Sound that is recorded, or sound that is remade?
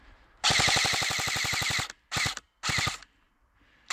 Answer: recorded